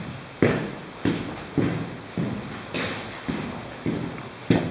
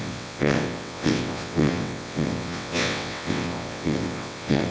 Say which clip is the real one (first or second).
first